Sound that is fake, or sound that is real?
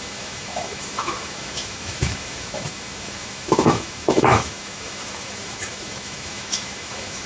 fake